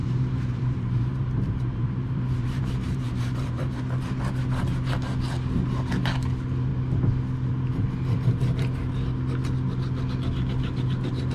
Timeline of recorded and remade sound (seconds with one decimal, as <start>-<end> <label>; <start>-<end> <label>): 0.0-3.8 remade; 3.8-11.3 recorded